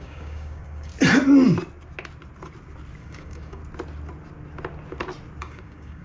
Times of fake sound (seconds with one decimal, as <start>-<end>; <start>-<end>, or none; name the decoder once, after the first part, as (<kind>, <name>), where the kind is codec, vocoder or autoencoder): 0.0-0.9 (codec, DAC); 3.0-3.6; 5.4-6.0